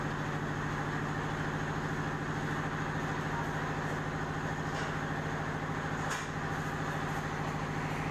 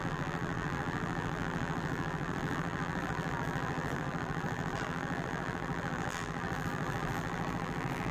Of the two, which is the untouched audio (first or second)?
first